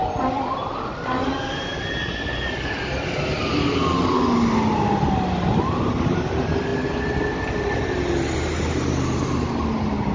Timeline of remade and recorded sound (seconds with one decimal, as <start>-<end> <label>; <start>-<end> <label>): 0.0-10.1 recorded